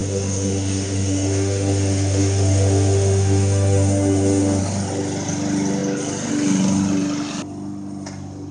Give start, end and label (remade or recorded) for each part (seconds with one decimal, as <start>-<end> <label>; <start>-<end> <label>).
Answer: 0.0-4.6 remade; 4.6-8.5 recorded